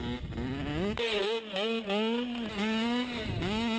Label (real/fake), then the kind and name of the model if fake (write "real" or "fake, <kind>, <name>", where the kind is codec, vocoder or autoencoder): real